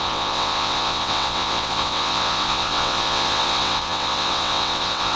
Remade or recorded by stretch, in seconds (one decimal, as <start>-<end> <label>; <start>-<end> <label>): 0.0-5.2 remade